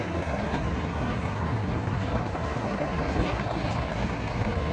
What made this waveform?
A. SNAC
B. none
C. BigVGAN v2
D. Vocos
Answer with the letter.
A